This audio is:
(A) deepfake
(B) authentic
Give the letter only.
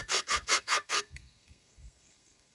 A